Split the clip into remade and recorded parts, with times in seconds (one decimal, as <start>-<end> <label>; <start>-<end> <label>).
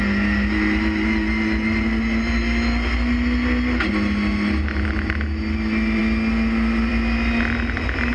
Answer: 0.0-8.1 recorded